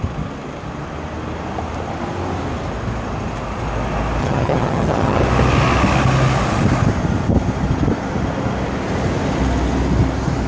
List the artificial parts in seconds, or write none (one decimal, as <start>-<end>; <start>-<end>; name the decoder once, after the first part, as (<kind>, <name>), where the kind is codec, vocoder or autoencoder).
4.2-5.2 (vocoder, HiFi-GAN)